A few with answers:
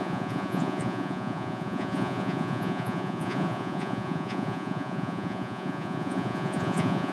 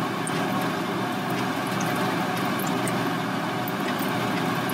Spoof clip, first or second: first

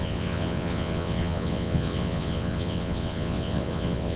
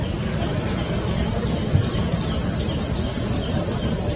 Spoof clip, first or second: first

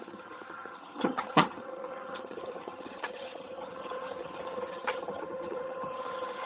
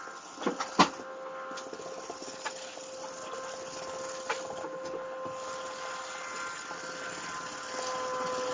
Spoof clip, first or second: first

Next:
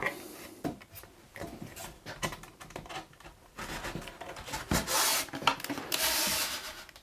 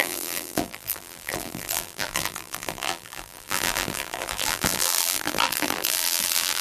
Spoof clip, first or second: second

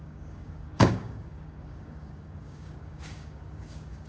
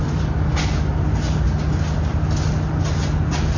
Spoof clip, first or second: first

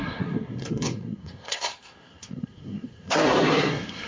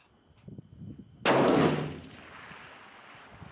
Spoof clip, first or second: first